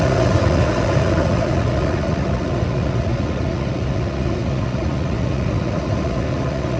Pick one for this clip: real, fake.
fake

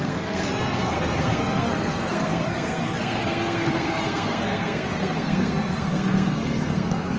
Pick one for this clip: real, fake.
fake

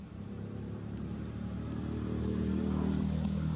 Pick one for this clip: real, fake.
real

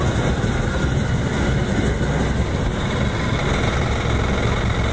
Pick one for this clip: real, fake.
real